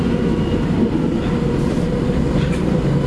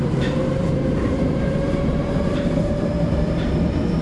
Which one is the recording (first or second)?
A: first